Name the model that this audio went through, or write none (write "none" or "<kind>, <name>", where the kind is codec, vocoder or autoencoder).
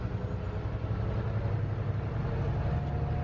none